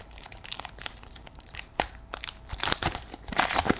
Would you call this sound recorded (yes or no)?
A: no